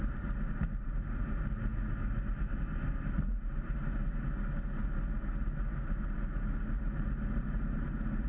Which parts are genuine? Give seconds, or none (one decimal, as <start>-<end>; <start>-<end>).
1.7-3.6

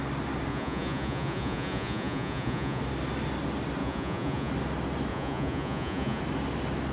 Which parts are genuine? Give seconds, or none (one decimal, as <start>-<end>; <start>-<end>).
0.0-0.5; 2.8-3.8; 4.5-5.1; 6.2-6.9

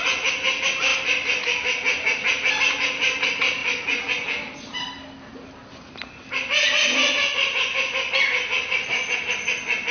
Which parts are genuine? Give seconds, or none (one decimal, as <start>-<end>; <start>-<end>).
0.0-9.9

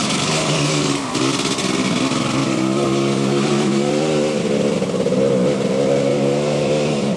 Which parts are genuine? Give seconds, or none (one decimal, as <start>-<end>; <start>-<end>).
1.1-2.4; 3.9-6.1